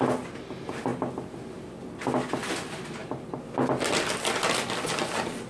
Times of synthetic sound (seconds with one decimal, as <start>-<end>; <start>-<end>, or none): none